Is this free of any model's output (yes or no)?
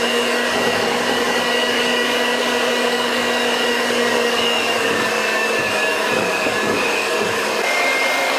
no